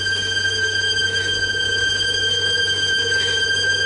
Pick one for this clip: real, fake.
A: fake